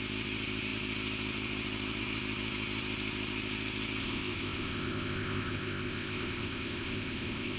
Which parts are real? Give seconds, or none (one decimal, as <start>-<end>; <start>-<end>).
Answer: 0.0-4.0